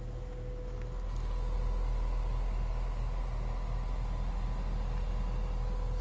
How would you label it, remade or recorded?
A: recorded